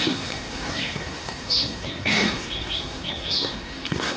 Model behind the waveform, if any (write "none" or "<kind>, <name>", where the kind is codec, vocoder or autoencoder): codec, SNAC